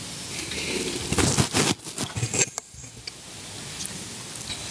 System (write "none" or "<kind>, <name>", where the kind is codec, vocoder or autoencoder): none